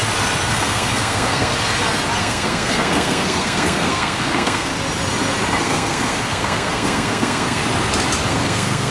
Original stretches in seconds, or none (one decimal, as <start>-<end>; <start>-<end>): 0.0-0.5; 1.5-2.2; 4.7-5.6; 7.6-8.3